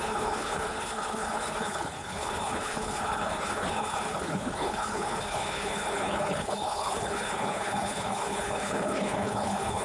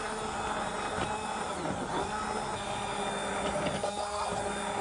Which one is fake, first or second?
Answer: first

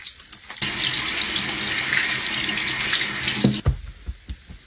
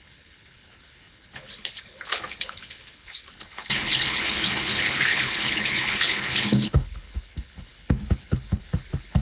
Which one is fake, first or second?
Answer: second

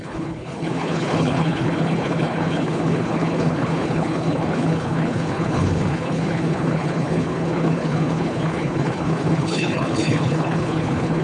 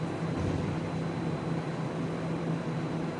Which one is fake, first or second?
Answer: first